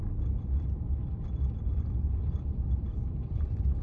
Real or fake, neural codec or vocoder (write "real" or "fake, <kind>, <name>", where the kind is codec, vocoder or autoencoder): real